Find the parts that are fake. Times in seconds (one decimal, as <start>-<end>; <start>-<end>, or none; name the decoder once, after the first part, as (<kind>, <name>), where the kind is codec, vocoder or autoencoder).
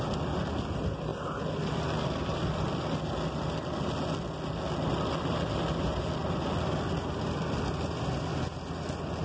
none